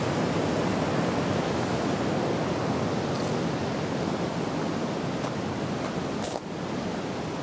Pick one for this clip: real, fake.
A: real